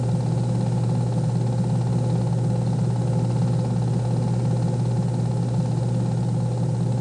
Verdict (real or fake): real